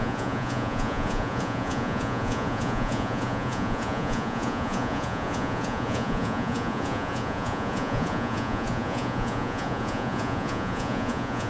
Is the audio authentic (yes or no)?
no